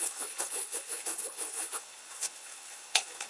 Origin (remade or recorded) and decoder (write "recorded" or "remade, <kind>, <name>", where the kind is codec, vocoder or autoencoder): remade, codec, HILCodec